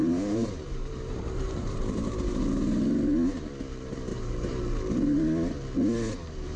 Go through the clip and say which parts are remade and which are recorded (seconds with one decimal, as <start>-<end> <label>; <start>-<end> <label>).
0.0-2.4 remade; 2.4-4.1 recorded; 4.1-4.6 remade; 4.6-6.6 recorded